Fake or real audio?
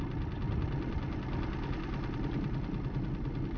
real